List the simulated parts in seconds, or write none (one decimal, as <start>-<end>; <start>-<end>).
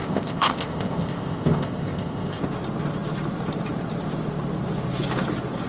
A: 0.0-2.4